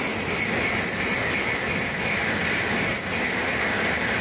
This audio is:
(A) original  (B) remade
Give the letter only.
A